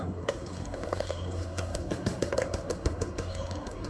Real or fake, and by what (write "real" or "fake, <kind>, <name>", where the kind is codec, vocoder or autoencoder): fake, codec, SNAC